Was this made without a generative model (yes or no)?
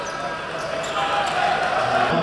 yes